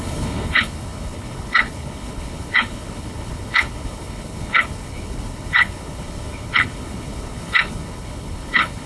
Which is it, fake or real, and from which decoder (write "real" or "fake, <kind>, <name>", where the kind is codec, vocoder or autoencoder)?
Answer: fake, codec, HILCodec